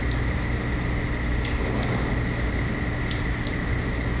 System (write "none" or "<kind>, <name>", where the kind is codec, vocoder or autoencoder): none